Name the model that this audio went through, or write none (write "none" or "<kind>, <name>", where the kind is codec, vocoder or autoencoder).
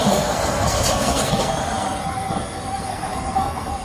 codec, SNAC